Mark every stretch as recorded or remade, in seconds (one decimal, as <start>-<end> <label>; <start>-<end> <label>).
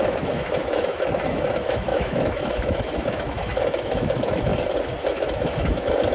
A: 0.0-4.5 remade; 4.5-5.1 recorded; 5.1-6.1 remade